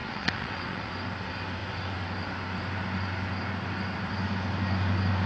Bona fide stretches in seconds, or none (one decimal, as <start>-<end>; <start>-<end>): 0.9-5.3

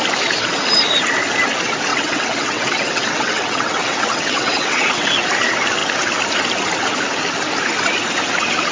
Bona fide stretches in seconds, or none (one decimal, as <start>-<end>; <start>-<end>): 0.0-1.9; 5.1-8.7

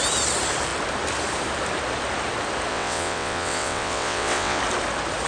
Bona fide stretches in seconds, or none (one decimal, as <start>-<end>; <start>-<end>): 0.0-2.7; 4.6-5.3

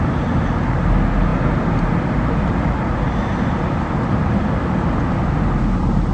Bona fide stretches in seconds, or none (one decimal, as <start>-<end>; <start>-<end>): 0.0-6.1

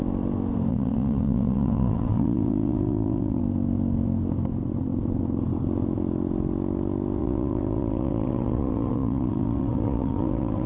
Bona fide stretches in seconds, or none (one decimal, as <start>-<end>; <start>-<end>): 0.0-0.7; 3.4-7.2